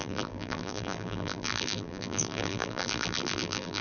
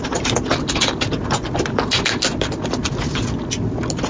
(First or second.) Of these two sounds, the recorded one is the second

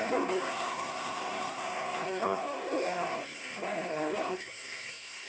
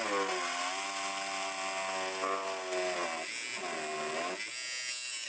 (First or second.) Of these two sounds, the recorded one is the second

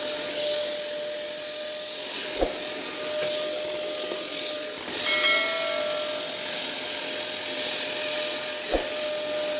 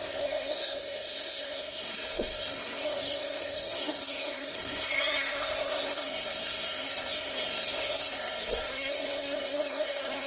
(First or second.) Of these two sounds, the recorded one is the first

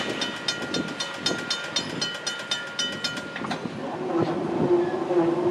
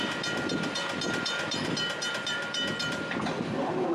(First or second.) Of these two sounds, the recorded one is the first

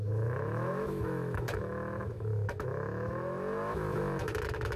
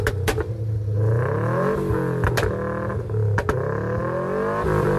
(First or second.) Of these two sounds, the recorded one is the second